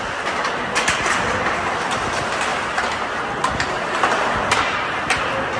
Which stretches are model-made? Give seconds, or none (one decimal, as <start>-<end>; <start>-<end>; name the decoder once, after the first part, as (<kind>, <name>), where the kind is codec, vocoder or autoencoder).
none